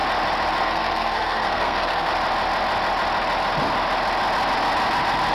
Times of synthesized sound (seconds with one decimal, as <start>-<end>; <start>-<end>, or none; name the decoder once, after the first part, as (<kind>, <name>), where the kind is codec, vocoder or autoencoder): 0.6-2.1 (codec, SNAC)